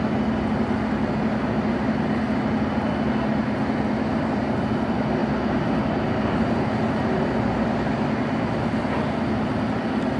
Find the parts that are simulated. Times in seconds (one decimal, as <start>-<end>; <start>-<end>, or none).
none